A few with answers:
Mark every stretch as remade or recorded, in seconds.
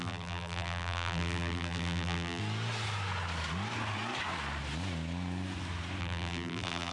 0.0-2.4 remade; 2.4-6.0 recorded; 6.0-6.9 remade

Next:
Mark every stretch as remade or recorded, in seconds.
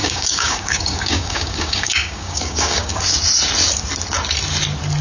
0.0-3.0 remade; 3.0-5.0 recorded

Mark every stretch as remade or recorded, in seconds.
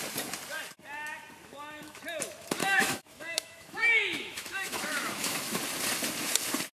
0.0-1.4 recorded; 1.4-2.0 remade; 2.0-2.6 recorded; 2.6-5.6 remade; 5.6-6.8 recorded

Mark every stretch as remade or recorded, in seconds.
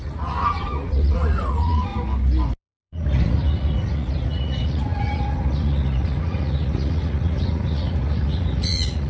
0.0-1.9 remade; 1.9-2.6 recorded; 2.6-9.1 remade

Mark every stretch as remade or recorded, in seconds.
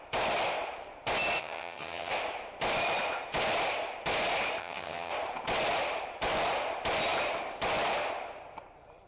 0.0-1.4 recorded; 1.4-2.1 remade; 2.1-4.6 recorded; 4.6-5.1 remade; 5.1-9.1 recorded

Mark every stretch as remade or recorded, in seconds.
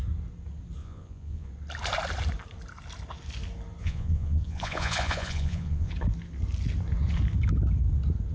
0.0-0.8 recorded; 0.8-1.5 remade; 1.5-3.8 recorded; 3.8-5.9 remade; 5.9-8.3 recorded